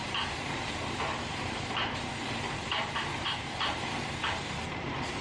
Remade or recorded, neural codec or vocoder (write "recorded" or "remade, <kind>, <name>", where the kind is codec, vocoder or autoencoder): remade, vocoder, BigVGAN v2